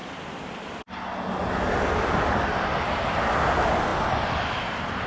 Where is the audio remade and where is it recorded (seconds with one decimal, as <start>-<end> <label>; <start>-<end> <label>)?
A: 0.0-0.6 remade; 0.6-1.4 recorded; 1.4-2.5 remade; 2.5-5.1 recorded